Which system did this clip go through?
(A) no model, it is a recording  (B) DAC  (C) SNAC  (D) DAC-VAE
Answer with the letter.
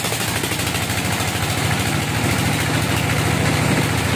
A